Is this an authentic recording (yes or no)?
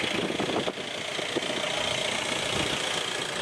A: yes